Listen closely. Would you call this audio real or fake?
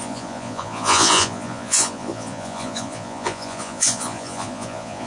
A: fake